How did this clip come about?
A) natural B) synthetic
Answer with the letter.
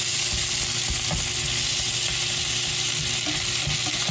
A